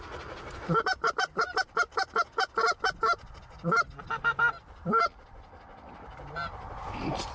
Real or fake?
fake